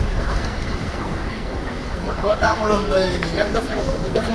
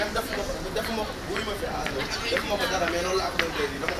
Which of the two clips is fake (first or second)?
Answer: first